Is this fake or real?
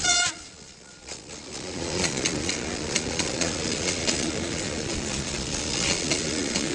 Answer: fake